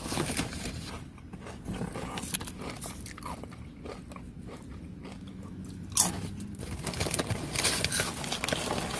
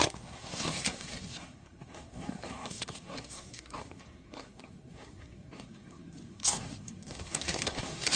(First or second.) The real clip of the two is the first